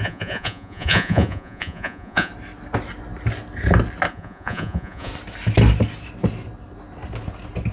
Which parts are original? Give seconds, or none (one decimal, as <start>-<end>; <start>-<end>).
2.3-4.1; 5.1-7.7